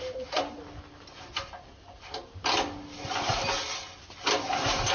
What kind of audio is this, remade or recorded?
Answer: recorded